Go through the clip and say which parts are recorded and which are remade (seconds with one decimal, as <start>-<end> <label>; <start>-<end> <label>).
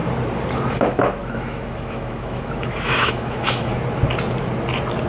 0.0-0.7 recorded; 0.7-3.7 remade; 3.7-5.1 recorded